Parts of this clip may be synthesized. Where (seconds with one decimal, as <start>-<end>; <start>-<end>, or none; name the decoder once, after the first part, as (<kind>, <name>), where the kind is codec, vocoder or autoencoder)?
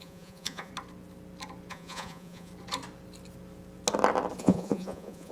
0.0-0.7 (vocoder, Vocos); 1.7-2.5; 4.4-5.3